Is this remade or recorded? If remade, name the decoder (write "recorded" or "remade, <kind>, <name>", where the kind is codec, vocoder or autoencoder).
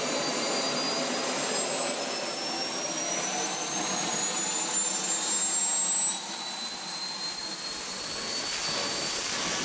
recorded